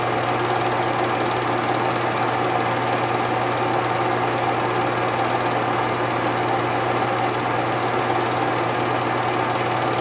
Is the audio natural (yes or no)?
yes